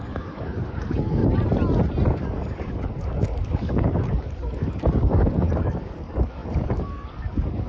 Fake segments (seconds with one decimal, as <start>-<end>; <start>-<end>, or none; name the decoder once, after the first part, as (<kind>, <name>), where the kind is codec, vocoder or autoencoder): 0.0-1.2 (codec, DAC); 2.1-7.7